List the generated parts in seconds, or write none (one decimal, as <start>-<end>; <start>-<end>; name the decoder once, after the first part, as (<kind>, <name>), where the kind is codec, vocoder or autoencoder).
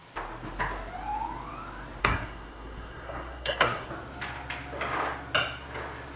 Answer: 2.0-3.9 (codec, SNAC)